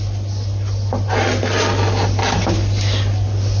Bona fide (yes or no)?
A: yes